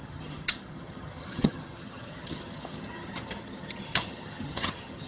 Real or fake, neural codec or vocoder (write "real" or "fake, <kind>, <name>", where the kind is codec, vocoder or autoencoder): fake, vocoder, HiFi-GAN